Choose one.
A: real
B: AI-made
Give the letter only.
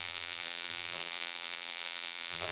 B